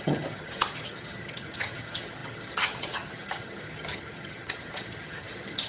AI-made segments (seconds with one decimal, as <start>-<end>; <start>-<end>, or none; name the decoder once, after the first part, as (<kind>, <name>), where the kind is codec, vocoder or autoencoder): 0.0-5.7 (vocoder, HiFi-GAN)